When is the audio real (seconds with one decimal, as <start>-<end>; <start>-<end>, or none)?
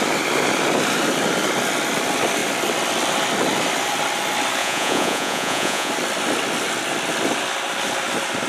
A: 0.0-4.6; 5.9-8.5